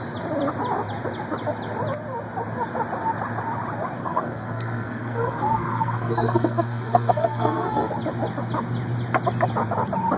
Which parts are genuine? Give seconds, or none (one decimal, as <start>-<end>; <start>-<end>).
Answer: 0.0-4.0; 7.9-10.2